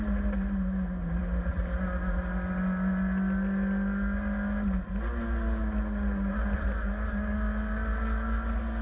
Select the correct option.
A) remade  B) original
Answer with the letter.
B